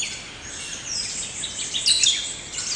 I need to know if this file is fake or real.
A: real